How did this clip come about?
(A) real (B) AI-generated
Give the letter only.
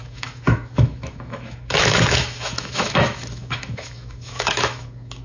B